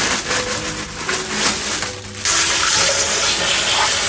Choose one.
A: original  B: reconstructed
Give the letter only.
A